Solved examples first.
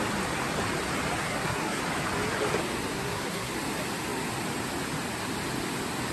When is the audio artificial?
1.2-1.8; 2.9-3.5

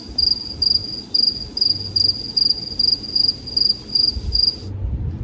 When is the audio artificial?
none

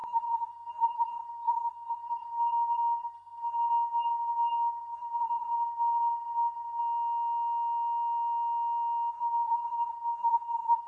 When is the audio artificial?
0.0-6.8; 9.1-10.9